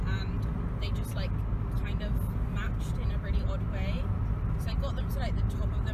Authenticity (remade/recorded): recorded